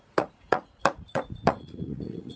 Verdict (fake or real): fake